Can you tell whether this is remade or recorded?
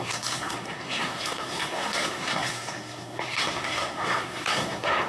remade